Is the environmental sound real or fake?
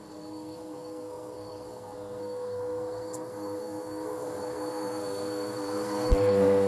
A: fake